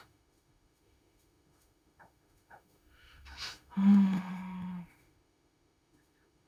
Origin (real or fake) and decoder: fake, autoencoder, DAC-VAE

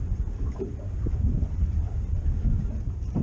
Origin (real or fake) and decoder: fake, vocoder, BigVGAN v2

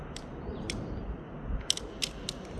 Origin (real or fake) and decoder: real